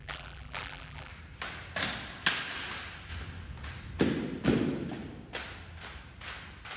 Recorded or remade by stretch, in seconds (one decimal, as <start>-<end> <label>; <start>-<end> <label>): 0.0-1.1 remade; 1.1-6.8 recorded